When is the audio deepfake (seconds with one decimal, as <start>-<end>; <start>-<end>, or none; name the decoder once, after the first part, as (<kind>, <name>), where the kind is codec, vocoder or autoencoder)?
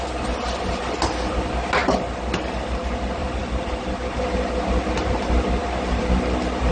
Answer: 3.2-3.9 (vocoder, BigVGAN v2)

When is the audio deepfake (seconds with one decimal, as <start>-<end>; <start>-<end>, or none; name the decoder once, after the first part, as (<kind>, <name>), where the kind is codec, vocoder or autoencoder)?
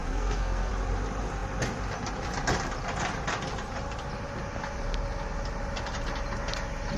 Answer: 0.0-0.7 (codec, SNAC)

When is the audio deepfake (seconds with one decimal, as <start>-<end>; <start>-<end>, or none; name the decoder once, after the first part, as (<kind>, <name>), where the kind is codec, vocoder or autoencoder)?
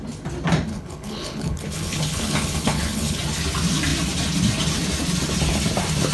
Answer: 0.7-3.2 (codec, HILCodec)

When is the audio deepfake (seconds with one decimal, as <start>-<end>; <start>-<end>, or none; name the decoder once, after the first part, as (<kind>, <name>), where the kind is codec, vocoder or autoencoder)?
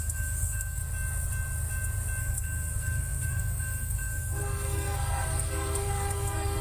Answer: 0.0-0.8 (codec, SNAC); 2.2-6.6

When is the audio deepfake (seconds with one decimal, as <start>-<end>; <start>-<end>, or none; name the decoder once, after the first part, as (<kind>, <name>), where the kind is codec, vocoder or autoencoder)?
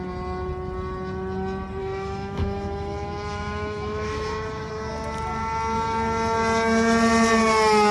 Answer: 1.8-4.7 (autoencoder, DAC-VAE)